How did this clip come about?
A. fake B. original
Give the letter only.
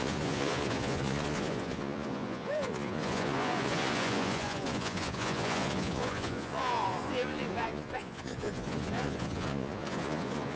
A